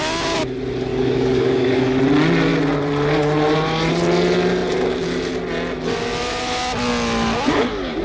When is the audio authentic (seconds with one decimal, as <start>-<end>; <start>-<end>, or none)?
0.0-0.9; 2.0-8.0